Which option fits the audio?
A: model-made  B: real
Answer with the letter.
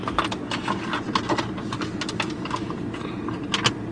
B